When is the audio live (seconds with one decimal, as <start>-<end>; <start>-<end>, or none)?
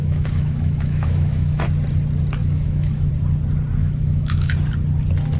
1.6-2.4; 3.1-3.8; 4.5-5.4